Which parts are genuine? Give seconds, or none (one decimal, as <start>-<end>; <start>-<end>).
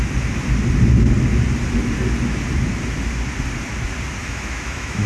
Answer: 0.0-4.2